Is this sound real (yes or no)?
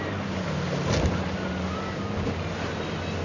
yes